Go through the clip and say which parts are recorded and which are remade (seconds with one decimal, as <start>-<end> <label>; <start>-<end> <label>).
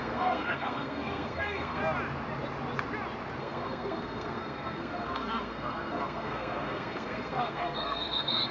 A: 0.0-1.8 remade; 1.8-3.4 recorded; 3.4-8.5 remade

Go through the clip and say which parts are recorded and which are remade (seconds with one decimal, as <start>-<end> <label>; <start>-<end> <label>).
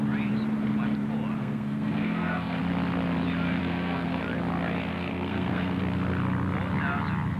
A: 0.0-1.4 recorded; 1.4-2.6 remade; 2.6-3.6 recorded; 3.6-4.2 remade; 4.2-4.9 recorded; 4.9-5.8 remade; 5.8-7.4 recorded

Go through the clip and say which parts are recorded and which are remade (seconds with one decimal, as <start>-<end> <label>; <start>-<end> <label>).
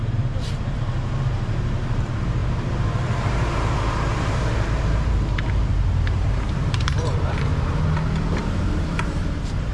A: 0.0-7.5 remade; 7.5-8.4 recorded; 8.4-9.7 remade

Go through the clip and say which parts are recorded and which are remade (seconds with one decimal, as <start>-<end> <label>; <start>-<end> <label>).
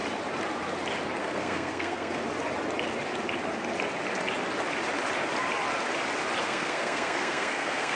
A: 0.0-1.2 recorded; 1.2-2.2 remade; 2.2-6.4 recorded; 6.4-7.9 remade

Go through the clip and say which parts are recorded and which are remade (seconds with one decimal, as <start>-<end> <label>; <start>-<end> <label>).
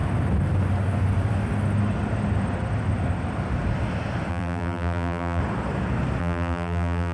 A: 0.0-4.3 recorded; 4.3-5.4 remade; 5.4-6.2 recorded; 6.2-7.1 remade